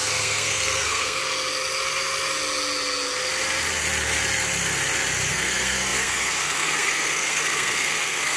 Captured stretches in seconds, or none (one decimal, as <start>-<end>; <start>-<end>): 1.2-5.3

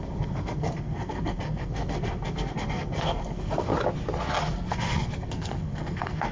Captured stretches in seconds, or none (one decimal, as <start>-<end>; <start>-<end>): 3.7-4.5

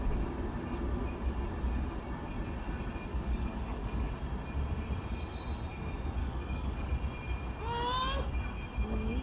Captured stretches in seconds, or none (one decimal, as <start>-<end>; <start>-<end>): 0.0-3.1; 4.1-6.2; 6.9-9.2

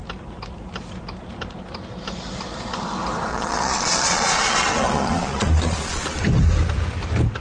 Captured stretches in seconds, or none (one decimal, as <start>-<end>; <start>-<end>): 0.0-3.3; 6.2-7.4

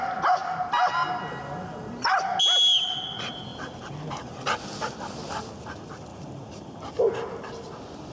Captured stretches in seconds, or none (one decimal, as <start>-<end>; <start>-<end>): 0.0-6.1; 6.9-8.1

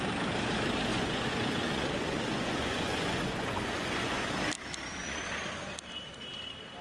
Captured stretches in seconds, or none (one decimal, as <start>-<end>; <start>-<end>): 0.0-0.9; 4.3-4.9; 5.6-6.8

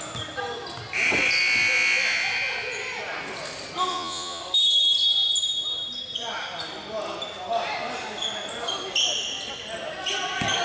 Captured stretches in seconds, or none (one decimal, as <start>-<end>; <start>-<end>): 0.0-3.9; 4.4-10.6

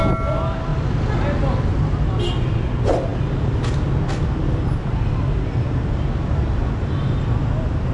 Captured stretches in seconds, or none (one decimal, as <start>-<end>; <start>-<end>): 0.0-7.9